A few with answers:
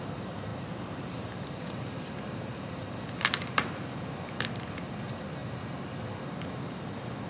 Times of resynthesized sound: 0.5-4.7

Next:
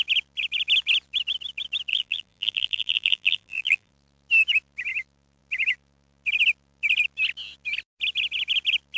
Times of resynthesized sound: 1.9-3.9